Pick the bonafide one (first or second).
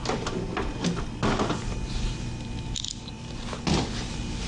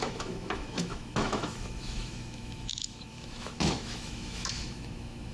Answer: first